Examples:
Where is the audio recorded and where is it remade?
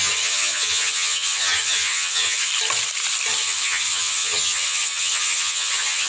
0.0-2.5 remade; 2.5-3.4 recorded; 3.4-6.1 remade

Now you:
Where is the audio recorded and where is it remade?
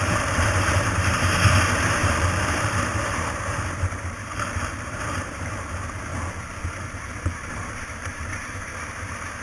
0.0-6.1 remade; 6.1-6.7 recorded; 6.7-9.4 remade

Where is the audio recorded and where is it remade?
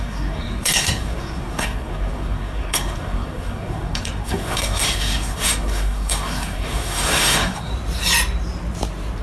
0.0-7.7 remade; 7.7-9.2 recorded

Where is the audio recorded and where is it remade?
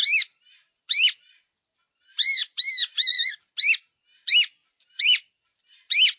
0.0-2.1 recorded; 2.1-3.5 remade; 3.5-4.6 recorded; 4.6-5.6 remade; 5.6-6.2 recorded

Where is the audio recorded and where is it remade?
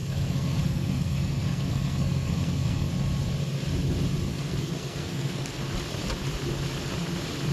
0.0-2.9 remade; 2.9-4.3 recorded; 4.3-5.6 remade; 5.6-7.5 recorded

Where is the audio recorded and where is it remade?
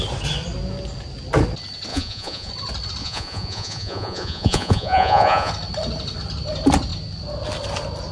0.0-1.9 recorded; 1.9-2.5 remade; 2.5-3.0 recorded; 3.0-5.5 remade; 5.5-8.1 recorded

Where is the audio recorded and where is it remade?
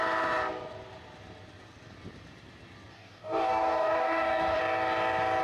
0.0-2.9 recorded; 2.9-4.6 remade; 4.6-5.4 recorded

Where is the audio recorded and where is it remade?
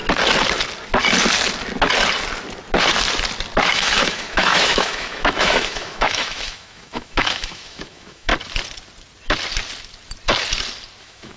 0.0-3.7 recorded; 3.7-8.3 remade; 8.3-11.0 recorded; 11.0-11.4 remade